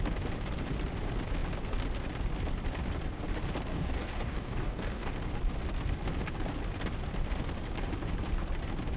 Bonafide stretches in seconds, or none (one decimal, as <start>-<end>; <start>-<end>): 0.0-3.7; 5.1-9.0